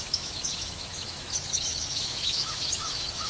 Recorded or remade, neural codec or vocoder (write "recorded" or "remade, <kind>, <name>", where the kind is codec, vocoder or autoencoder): remade, autoencoder, DAC-VAE